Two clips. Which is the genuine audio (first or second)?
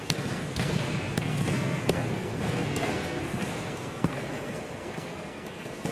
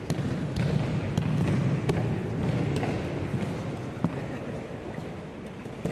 second